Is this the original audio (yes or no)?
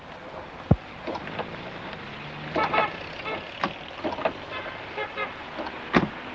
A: yes